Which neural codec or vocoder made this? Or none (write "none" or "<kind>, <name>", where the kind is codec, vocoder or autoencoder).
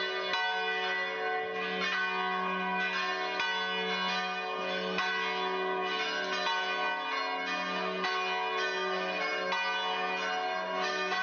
none